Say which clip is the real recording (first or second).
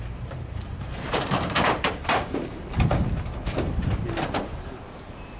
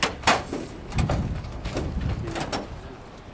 second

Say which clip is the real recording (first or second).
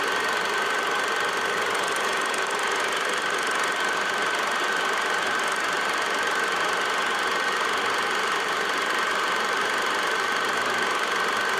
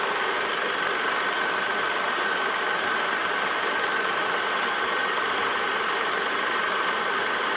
second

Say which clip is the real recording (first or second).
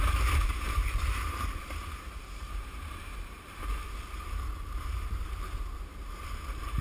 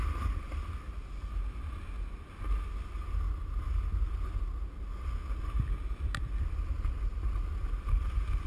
second